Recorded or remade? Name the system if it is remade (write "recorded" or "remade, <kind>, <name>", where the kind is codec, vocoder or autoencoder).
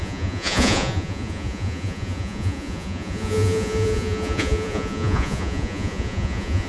remade, vocoder, Vocos